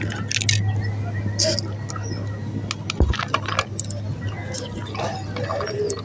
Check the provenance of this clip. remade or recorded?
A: recorded